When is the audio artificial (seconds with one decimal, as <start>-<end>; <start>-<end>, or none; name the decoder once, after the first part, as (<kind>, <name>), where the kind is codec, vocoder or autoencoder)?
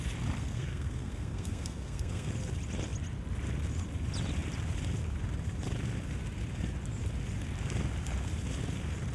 0.4-2.3 (codec, SNAC)